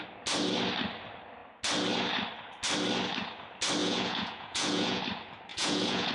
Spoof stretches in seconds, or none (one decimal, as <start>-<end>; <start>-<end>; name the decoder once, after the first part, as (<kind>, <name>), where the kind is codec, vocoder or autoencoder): 3.8-5.0 (vocoder, Vocos); 5.5-6.1

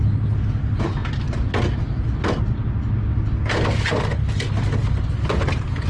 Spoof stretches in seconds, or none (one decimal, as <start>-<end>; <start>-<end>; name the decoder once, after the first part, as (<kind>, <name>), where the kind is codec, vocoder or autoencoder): none

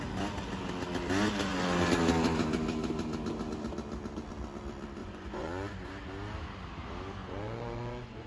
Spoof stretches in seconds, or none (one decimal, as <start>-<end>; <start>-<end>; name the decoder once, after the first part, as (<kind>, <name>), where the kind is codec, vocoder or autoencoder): 5.0-5.9 (vocoder, Vocos); 7.2-8.3

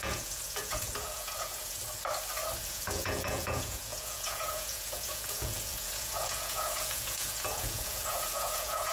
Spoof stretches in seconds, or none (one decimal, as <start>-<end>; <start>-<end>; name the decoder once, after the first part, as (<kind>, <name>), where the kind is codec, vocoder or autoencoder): 0.0-1.8 (vocoder, Vocos); 2.7-8.9